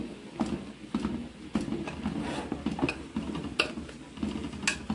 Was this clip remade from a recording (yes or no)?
no